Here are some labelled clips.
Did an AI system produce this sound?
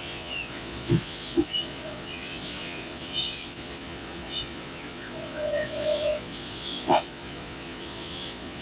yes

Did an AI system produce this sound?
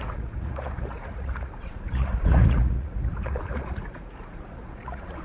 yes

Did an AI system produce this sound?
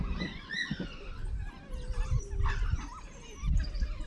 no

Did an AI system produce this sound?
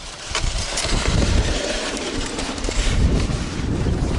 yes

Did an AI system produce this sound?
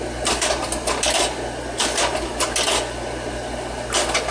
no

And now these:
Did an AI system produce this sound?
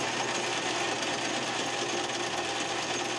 no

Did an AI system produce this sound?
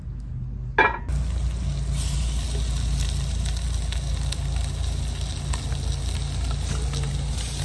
no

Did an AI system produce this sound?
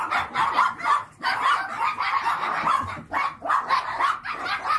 no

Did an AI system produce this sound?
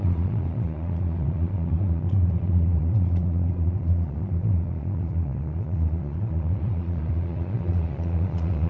yes